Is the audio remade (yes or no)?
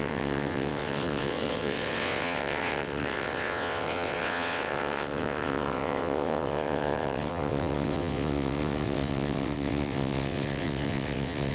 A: yes